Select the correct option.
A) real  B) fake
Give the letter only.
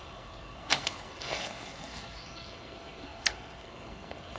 B